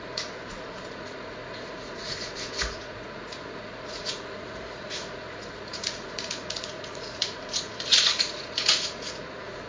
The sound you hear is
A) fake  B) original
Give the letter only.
A